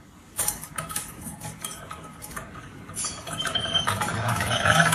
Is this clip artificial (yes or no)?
yes